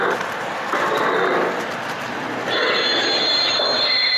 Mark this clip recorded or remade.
recorded